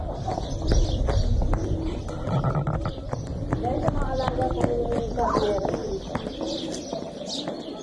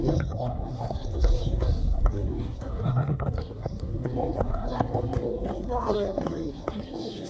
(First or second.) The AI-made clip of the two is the second